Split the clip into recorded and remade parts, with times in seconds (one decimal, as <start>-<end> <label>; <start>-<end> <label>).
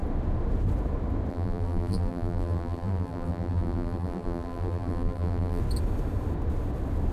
0.0-1.3 recorded; 1.3-5.6 remade; 5.6-7.1 recorded